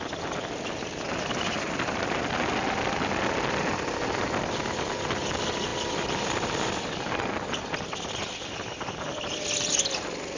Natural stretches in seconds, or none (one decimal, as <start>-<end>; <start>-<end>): 0.0-10.4